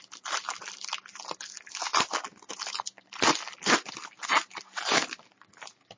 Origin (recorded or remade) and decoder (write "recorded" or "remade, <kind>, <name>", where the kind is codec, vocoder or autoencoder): remade, vocoder, BigVGAN v2